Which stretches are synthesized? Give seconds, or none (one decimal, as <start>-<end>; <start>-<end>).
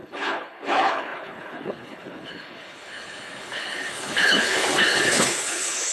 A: 0.0-5.9